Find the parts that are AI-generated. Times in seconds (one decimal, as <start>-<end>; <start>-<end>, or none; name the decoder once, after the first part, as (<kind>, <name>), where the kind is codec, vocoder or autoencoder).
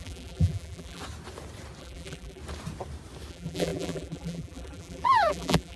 0.0-1.0 (vocoder, BigVGAN v2); 1.8-2.4; 3.3-5.8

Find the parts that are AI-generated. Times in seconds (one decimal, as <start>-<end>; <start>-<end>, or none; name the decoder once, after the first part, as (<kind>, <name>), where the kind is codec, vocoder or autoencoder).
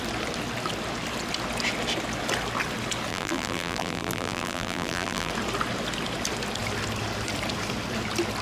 3.1-5.3 (vocoder, BigVGAN v2)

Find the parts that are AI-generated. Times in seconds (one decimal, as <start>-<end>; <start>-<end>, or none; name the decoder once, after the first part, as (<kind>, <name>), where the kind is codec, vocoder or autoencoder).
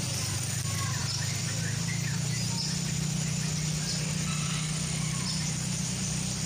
0.0-1.0 (vocoder, BigVGAN v2); 2.8-6.5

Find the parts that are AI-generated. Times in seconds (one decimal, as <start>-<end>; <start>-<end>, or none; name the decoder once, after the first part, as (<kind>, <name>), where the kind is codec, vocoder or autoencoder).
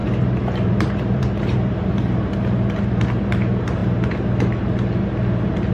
0.0-3.2 (vocoder, BigVGAN v2)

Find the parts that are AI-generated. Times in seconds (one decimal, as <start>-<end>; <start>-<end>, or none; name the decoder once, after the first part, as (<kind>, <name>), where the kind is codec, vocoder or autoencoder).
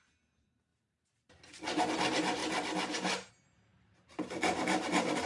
0.7-1.8 (vocoder, BigVGAN v2); 3.7-5.3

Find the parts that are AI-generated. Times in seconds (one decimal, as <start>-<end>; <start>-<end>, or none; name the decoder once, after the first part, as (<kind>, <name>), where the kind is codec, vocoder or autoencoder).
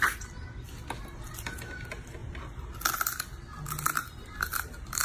none